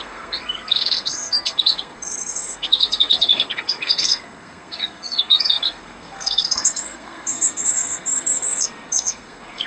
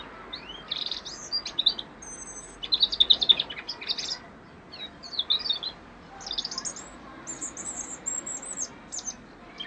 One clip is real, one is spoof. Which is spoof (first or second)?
first